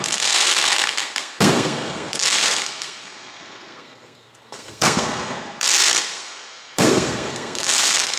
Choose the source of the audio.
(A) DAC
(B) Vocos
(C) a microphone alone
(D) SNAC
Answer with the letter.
D